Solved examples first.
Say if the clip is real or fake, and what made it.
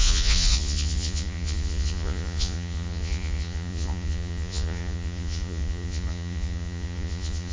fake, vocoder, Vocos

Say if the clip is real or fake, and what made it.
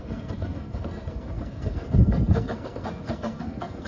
fake, codec, SNAC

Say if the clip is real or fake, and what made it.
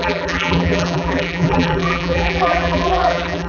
fake, vocoder, BigVGAN v2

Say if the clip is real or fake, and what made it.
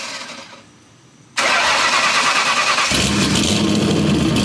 real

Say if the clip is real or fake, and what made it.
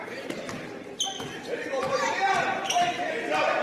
real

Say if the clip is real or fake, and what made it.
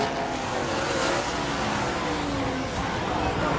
real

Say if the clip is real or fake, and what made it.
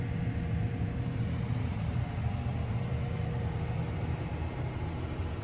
real